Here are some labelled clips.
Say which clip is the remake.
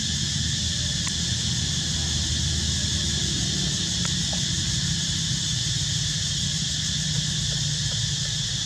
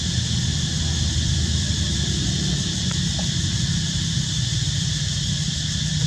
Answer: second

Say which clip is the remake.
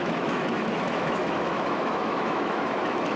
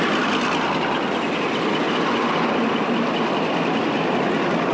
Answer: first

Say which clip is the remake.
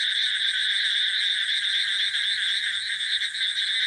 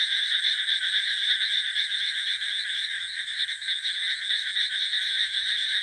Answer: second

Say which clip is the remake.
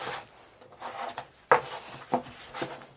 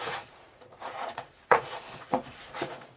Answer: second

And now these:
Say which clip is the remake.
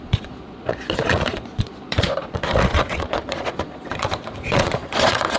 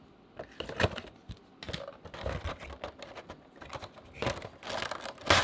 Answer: first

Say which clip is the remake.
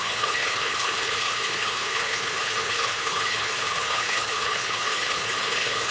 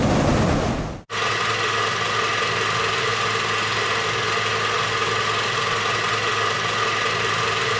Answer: first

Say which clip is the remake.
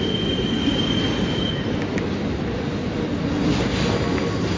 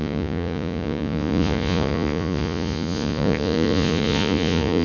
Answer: second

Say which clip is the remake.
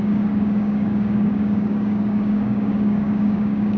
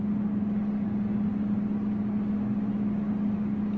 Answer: first